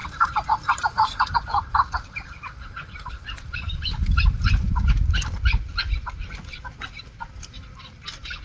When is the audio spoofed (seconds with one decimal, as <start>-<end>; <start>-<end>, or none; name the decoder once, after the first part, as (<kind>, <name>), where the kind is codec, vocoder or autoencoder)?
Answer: 0.0-4.9 (vocoder, BigVGAN v2)